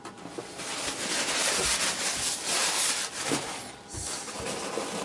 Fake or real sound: real